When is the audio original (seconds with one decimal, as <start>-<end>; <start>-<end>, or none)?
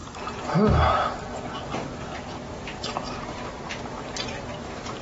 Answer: 0.0-5.0